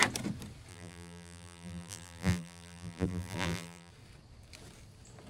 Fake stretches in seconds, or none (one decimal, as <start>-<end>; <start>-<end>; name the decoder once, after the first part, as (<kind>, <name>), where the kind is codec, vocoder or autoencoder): 0.7-3.9 (vocoder, BigVGAN v2)